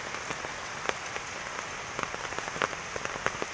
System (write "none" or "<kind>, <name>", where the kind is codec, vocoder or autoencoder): none